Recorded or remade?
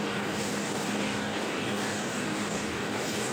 remade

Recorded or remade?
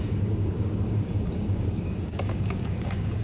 remade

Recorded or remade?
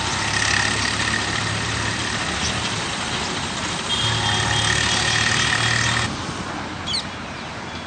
recorded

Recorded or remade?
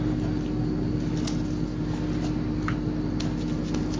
recorded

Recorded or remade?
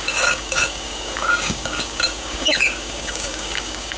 remade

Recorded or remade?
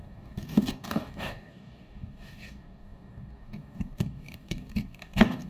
remade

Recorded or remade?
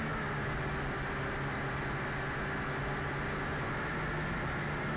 recorded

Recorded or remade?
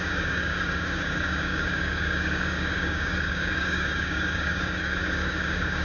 remade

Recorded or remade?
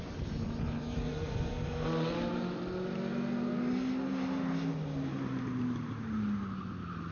recorded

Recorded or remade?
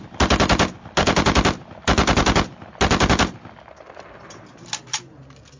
recorded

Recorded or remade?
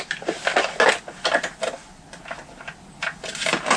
recorded